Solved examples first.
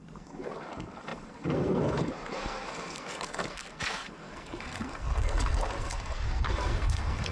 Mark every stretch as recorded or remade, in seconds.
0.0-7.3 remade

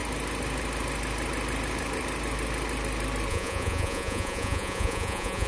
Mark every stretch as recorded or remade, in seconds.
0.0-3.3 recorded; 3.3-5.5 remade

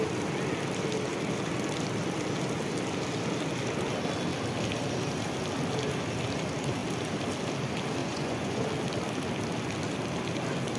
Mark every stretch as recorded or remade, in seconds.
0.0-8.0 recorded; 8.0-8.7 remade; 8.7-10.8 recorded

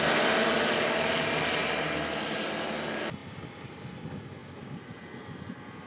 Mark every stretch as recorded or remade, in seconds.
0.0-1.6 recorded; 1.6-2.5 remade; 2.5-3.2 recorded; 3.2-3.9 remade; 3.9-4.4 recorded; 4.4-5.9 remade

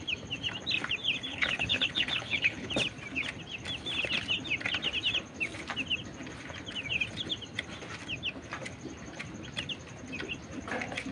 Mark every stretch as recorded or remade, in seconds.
0.0-1.3 recorded; 1.3-2.7 remade; 2.7-11.1 recorded

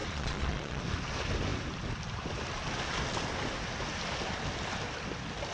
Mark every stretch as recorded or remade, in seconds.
0.0-0.8 remade; 0.8-5.5 recorded

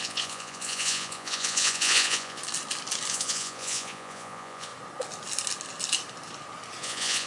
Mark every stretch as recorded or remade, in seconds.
0.0-2.4 remade; 2.4-3.1 recorded; 3.1-4.7 remade; 4.7-6.8 recorded; 6.8-7.3 remade